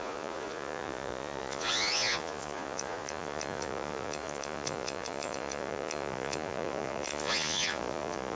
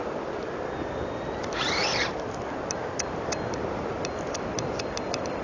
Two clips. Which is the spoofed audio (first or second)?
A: first